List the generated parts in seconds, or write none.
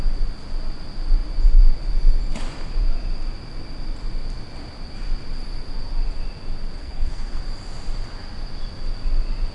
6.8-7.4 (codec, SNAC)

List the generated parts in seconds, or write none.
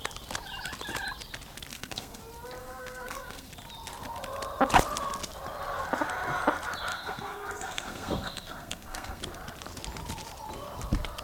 1.7-2.2 (codec, SNAC); 2.6-3.5; 6.9-9.2